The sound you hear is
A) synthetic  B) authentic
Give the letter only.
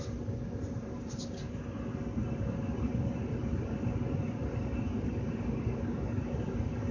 B